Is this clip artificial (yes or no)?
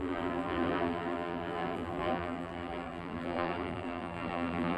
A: yes